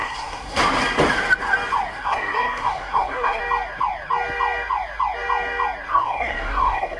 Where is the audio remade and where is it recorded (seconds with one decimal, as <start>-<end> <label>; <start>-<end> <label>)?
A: 0.0-0.6 remade; 0.6-1.9 recorded; 1.9-3.4 remade; 3.4-5.9 recorded; 5.9-7.0 remade